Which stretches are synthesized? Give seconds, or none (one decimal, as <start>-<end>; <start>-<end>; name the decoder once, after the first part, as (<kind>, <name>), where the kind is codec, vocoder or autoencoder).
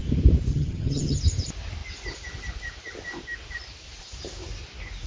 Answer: 0.5-1.2 (vocoder, HiFi-GAN)